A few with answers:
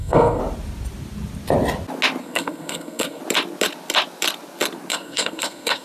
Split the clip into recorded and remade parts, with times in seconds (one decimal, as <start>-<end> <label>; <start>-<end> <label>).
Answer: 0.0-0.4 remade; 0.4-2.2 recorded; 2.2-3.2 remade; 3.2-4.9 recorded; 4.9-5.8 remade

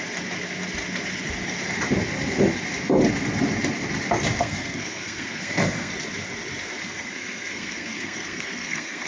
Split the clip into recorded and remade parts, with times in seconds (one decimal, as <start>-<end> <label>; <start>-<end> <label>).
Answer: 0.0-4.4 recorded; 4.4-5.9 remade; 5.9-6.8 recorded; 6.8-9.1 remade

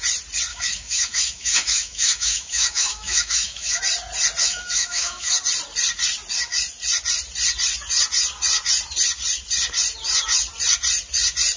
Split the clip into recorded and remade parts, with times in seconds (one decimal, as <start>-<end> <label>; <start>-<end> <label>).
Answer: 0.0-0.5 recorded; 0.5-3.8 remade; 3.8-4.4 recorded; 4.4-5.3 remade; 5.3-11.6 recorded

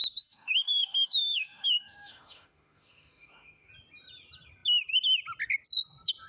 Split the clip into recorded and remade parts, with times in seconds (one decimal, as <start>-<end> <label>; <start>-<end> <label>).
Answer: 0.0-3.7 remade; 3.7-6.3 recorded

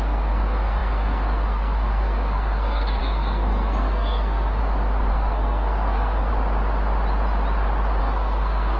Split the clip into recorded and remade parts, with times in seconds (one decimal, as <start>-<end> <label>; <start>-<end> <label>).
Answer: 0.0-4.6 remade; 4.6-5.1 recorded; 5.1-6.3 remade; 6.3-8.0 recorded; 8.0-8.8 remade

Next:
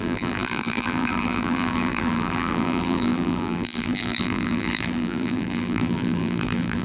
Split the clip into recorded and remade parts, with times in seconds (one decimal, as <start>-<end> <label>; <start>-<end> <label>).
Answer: 0.0-6.8 remade

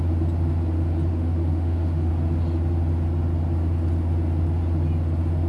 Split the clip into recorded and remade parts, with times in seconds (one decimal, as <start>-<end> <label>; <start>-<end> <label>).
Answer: 0.0-1.1 recorded; 1.1-2.1 remade; 2.1-5.5 recorded